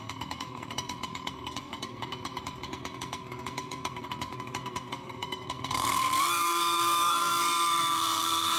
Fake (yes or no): yes